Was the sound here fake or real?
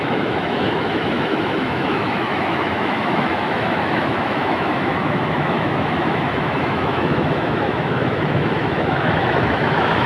fake